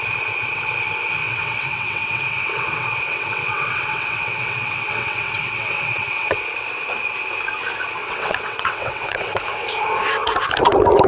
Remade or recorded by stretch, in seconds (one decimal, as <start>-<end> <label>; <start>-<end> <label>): 0.0-1.2 recorded; 1.2-6.4 remade; 6.4-8.0 recorded; 8.0-9.4 remade; 9.4-11.1 recorded